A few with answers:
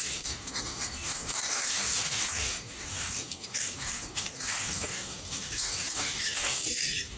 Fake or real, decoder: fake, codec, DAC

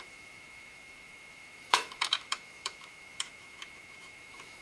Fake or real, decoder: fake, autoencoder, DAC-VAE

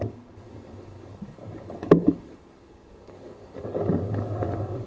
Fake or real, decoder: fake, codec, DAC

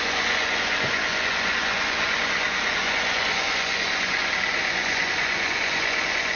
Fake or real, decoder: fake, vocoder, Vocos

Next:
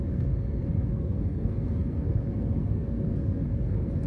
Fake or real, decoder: fake, codec, SNAC